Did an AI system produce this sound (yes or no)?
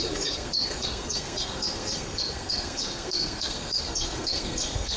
yes